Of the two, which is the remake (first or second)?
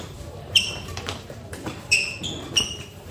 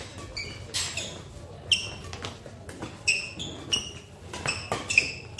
first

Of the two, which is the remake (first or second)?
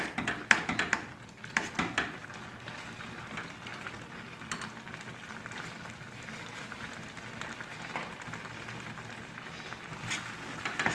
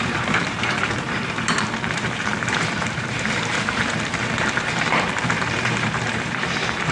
second